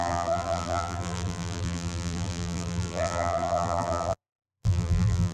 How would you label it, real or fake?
fake